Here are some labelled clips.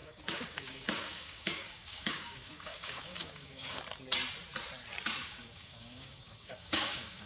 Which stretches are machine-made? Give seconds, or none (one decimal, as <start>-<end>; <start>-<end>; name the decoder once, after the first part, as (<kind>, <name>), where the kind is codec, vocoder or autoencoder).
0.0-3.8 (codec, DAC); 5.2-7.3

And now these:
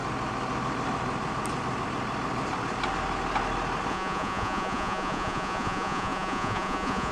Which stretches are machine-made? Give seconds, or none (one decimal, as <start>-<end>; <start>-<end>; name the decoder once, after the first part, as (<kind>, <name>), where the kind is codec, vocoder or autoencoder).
3.9-7.1 (vocoder, Vocos)

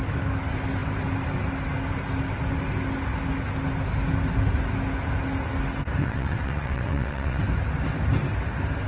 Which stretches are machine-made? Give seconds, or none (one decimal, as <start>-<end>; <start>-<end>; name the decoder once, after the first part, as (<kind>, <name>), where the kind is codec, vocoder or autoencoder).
6.0-7.4 (vocoder, WaveNeXt)

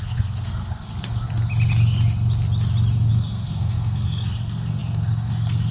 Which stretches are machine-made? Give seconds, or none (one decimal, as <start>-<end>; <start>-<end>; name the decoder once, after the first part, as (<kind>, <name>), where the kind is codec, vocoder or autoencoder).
0.0-0.9 (codec, SNAC); 3.1-5.7